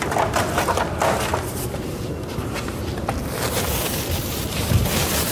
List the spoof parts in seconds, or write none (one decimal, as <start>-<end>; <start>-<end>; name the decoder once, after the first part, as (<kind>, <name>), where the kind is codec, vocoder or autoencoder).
0.0-5.3 (vocoder, BigVGAN v2)

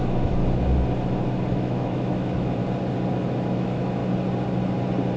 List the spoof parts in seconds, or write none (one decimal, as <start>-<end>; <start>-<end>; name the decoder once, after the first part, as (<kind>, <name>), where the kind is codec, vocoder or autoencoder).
0.0-0.4 (autoencoder, DAC-VAE); 1.5-2.6; 3.1-4.0